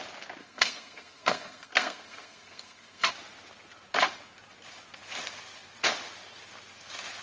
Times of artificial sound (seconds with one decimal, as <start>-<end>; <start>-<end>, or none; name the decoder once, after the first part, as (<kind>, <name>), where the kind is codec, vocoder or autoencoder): 0.4-3.1 (codec, SNAC)